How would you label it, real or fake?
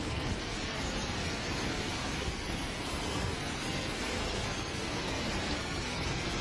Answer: fake